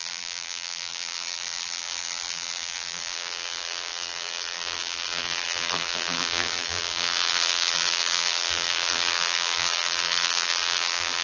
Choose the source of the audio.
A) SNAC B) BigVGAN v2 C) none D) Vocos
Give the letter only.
B